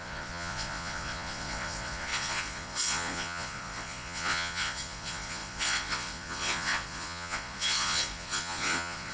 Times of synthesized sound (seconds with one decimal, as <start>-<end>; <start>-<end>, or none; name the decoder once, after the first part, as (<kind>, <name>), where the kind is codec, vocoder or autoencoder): 0.0-9.1 (vocoder, Vocos)